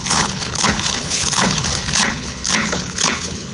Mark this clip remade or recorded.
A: remade